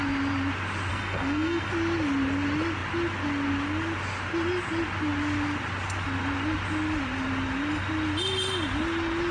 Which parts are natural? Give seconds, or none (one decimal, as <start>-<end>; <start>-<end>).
0.0-0.9; 1.7-9.3